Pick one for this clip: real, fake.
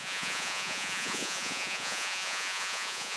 fake